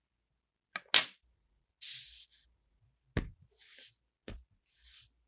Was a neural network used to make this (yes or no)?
no